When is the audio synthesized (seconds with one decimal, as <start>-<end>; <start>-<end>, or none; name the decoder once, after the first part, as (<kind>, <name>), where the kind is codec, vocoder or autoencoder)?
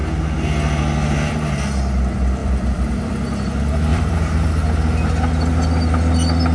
2.4-3.1 (vocoder, BigVGAN v2); 3.9-4.5